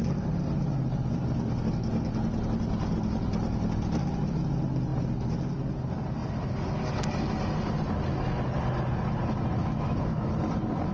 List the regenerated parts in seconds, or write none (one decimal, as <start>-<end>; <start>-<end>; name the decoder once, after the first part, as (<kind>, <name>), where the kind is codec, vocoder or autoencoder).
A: 9.6-10.3 (autoencoder, DAC-VAE)